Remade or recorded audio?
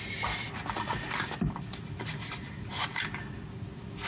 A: recorded